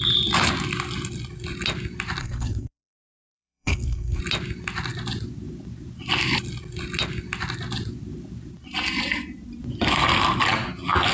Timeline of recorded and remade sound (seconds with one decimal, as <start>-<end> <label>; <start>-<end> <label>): 0.0-2.2 recorded; 2.2-4.2 remade; 4.2-11.1 recorded